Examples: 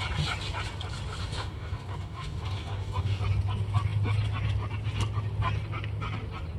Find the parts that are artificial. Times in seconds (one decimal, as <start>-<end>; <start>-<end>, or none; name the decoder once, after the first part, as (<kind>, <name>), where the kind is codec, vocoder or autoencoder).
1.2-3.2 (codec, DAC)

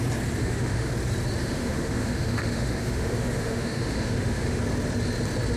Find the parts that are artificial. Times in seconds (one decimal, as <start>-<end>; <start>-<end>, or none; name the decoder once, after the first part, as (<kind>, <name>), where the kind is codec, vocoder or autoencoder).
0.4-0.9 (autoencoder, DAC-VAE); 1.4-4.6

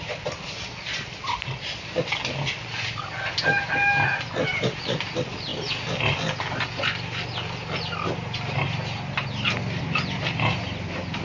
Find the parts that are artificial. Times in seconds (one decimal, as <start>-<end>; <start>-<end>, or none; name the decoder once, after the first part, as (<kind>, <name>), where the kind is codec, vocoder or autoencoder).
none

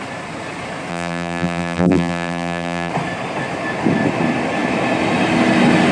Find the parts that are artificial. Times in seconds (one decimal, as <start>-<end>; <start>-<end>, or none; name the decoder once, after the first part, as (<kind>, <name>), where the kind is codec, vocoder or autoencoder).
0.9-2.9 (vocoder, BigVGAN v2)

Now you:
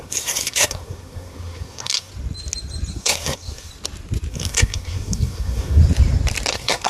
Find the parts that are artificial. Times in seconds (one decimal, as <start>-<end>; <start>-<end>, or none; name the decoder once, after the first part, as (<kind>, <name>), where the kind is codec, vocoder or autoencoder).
0.0-2.1 (codec, SNAC); 2.9-3.7; 4.3-5.8; 6.5-6.9

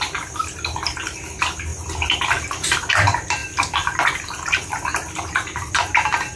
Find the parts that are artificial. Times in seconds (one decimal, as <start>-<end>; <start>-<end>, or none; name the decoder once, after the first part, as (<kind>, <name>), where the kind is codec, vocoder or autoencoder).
3.4-6.4 (vocoder, BigVGAN v2)